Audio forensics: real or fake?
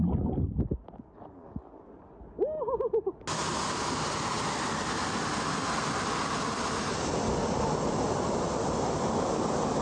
real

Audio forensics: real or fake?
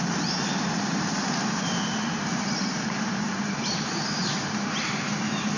fake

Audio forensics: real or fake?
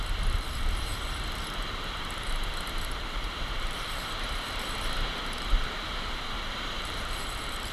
fake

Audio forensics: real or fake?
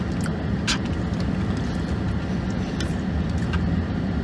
real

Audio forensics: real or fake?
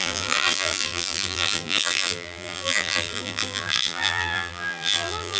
fake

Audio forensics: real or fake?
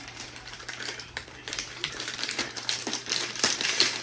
fake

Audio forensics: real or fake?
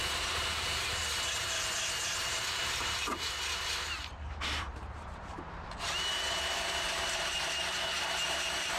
fake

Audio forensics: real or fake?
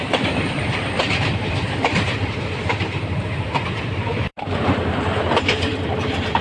fake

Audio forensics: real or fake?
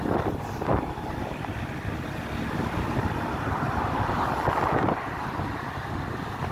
real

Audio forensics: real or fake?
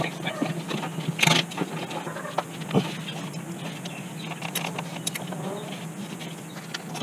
real